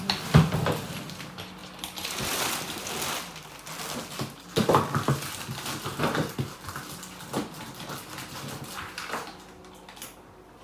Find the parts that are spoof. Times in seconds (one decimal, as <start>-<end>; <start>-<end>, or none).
none